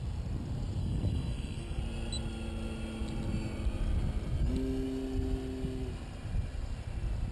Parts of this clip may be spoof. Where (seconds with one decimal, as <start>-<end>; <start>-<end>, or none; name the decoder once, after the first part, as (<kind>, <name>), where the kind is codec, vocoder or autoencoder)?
0.8-1.8 (codec, SNAC)